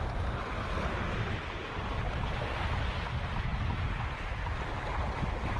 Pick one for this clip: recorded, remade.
recorded